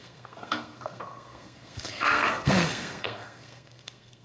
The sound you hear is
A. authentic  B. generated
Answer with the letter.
B